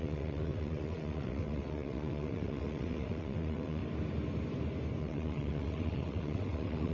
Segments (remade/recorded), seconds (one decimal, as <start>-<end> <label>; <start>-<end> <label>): 0.0-3.8 remade; 3.8-5.0 recorded; 5.0-6.9 remade